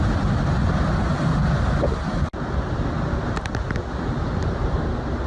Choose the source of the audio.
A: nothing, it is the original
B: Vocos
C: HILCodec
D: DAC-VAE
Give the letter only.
A